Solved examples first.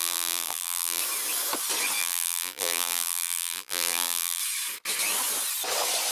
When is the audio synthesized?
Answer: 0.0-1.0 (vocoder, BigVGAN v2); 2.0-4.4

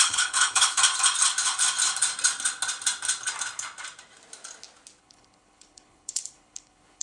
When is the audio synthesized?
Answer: 0.0-0.8 (codec, HILCodec); 5.0-7.0

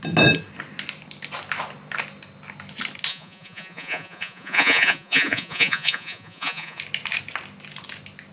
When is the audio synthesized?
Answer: 3.1-6.8 (vocoder, Vocos)

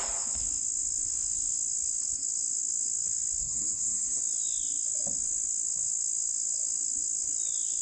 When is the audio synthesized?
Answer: 3.4-4.2 (codec, SNAC)